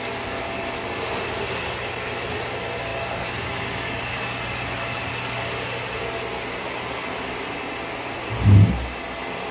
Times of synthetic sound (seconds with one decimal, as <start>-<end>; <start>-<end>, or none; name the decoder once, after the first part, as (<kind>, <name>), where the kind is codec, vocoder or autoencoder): none